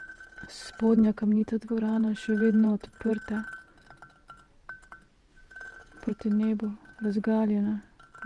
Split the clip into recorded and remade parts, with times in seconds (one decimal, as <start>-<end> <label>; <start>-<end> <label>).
0.0-3.1 remade; 3.1-5.3 recorded; 5.3-6.1 remade; 6.1-8.3 recorded